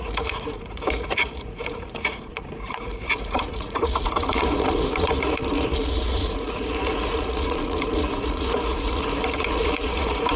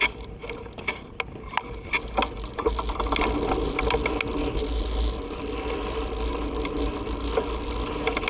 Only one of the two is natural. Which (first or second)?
second